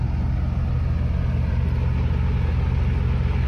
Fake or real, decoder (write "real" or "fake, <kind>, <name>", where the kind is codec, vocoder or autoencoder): real